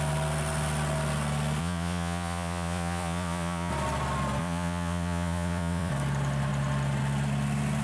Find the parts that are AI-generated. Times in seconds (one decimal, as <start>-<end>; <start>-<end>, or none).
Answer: 1.6-3.7; 4.4-5.9